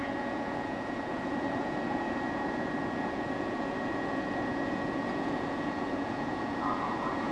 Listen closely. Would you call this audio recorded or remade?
remade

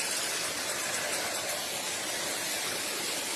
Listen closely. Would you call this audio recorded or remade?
recorded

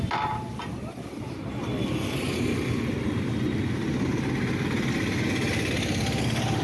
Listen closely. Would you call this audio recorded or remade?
recorded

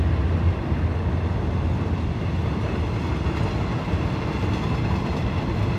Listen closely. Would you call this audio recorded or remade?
recorded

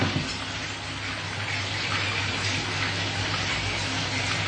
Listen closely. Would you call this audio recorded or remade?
recorded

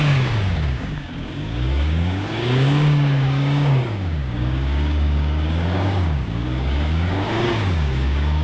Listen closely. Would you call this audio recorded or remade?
remade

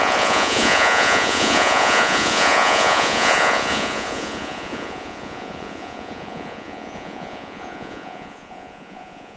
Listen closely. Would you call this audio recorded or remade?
remade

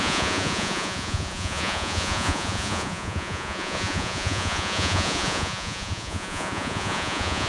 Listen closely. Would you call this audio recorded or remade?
remade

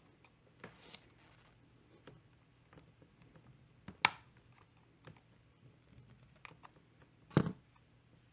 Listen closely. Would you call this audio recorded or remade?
recorded